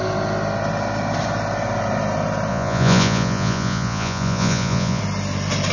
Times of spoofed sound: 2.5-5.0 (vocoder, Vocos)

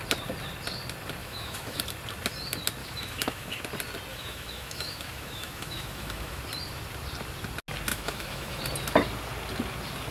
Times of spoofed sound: 1.2-1.8 (autoencoder, DAC-VAE); 2.8-3.6; 4.1-6.4; 7.9-8.6

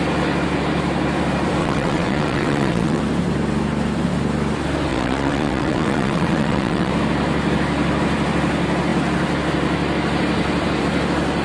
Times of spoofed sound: 1.6-3.0 (vocoder, WaveNeXt); 4.9-6.9

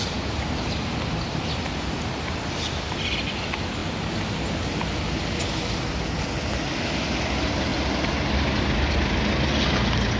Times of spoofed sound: none

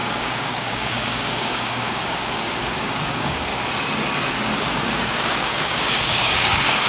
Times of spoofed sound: 0.0-3.5 (codec, DAC); 4.6-6.9

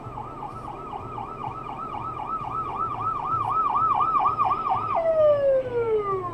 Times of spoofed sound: 1.4-5.2 (vocoder, BigVGAN v2)